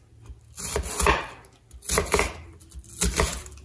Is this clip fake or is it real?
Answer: real